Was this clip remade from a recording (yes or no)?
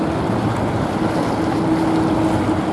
no